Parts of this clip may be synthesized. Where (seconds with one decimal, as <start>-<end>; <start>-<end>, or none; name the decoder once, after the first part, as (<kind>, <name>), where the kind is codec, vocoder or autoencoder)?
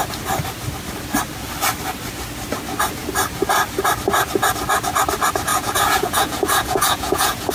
5.5-7.5 (vocoder, Vocos)